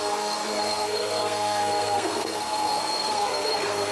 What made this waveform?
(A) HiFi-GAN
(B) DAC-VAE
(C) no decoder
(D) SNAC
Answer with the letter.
D